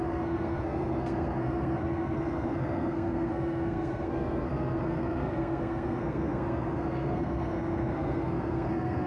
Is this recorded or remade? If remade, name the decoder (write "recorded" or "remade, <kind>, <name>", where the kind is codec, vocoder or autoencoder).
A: remade, codec, SNAC